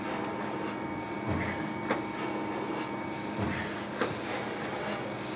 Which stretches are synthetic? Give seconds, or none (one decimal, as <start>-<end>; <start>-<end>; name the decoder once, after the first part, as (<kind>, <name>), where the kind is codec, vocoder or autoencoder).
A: none